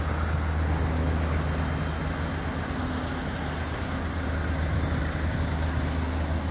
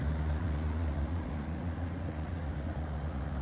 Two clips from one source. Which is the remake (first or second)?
second